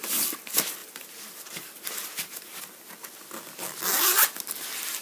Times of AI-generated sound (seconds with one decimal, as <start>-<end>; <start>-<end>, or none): 0.8-2.6